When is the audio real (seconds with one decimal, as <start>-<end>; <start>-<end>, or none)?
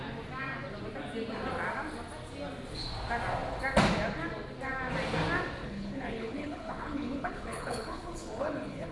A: 0.0-5.6